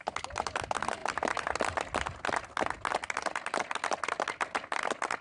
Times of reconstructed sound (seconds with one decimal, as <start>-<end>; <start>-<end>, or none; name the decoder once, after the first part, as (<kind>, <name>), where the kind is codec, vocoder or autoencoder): none